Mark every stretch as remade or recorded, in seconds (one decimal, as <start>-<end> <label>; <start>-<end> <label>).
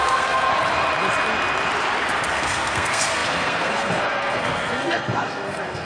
0.0-0.5 remade; 0.5-2.3 recorded; 2.3-5.8 remade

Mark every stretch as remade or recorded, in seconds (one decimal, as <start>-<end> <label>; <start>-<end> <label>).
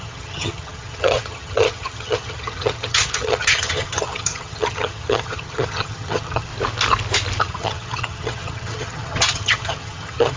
0.0-6.5 remade; 6.5-7.4 recorded; 7.4-10.4 remade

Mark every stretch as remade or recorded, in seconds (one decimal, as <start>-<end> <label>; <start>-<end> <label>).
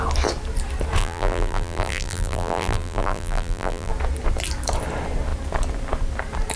0.0-1.0 recorded; 1.0-3.9 remade; 3.9-6.6 recorded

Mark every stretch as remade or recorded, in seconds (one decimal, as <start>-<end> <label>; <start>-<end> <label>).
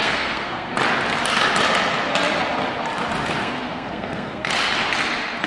0.0-0.7 remade; 0.7-3.4 recorded; 3.4-4.5 remade; 4.5-5.5 recorded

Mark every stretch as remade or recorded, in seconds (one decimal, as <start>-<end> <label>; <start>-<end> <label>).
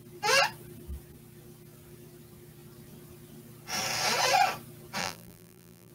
0.0-5.0 recorded; 5.0-5.9 remade